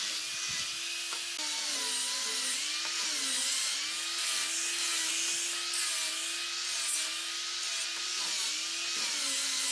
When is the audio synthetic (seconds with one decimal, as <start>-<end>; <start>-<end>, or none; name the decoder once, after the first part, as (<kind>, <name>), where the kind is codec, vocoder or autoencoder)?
none

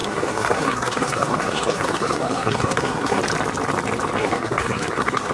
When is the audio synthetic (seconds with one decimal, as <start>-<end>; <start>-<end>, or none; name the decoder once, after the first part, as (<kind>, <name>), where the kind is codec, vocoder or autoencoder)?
0.0-3.2 (codec, SNAC); 4.2-5.3

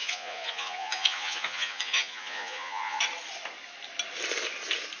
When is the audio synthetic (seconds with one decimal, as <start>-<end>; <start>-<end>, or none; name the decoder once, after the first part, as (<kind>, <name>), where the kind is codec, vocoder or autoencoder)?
0.0-3.0 (vocoder, Vocos)

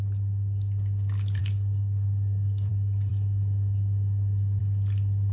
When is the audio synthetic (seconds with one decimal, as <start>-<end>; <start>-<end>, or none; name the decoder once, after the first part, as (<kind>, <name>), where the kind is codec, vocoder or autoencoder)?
1.4-2.7 (codec, DAC)

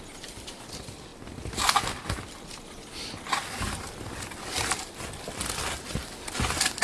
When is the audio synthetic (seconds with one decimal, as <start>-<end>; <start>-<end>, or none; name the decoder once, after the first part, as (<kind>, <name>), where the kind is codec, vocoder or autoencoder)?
0.0-1.1 (vocoder, BigVGAN v2); 5.2-6.8

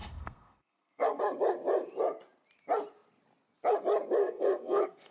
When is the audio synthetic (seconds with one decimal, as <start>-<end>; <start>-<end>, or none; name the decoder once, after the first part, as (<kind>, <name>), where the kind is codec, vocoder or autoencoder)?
0.0-1.2 (codec, SNAC); 4.2-5.1

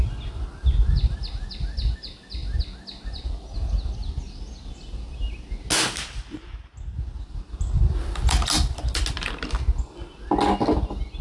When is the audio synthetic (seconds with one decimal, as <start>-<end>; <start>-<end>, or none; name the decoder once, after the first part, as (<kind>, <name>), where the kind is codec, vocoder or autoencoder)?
none

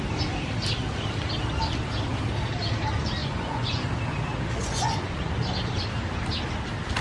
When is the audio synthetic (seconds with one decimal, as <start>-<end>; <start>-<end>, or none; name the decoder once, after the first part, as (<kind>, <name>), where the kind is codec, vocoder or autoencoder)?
3.2-3.9 (vocoder, Vocos); 4.6-5.3